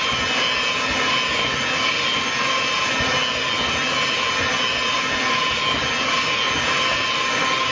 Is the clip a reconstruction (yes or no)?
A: no